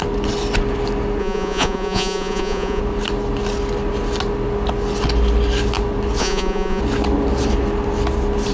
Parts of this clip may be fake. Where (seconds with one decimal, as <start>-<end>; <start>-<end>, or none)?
1.2-2.8; 6.2-6.8